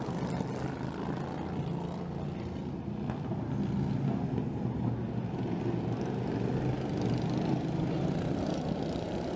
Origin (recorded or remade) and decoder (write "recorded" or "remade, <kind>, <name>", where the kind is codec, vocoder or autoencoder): recorded